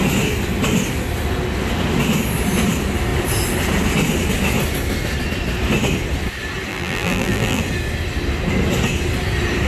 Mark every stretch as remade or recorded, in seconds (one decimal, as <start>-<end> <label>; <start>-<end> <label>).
0.0-6.7 recorded; 6.7-7.6 remade; 7.6-9.7 recorded